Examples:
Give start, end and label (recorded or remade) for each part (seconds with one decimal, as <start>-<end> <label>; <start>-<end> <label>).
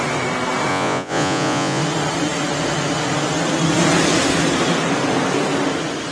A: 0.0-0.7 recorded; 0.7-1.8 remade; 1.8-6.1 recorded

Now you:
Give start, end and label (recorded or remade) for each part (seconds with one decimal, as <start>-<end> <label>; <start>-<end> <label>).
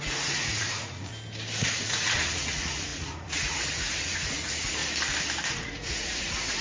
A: 0.0-1.1 remade; 1.1-1.7 recorded; 1.7-4.8 remade; 4.8-5.5 recorded; 5.5-6.6 remade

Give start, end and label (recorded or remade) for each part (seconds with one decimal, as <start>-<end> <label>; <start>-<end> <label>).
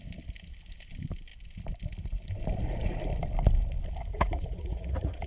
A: 0.0-4.1 recorded; 4.1-5.3 remade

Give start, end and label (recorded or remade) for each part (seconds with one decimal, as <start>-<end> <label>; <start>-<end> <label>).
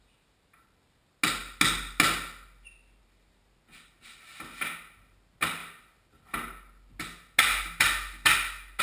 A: 0.0-8.8 recorded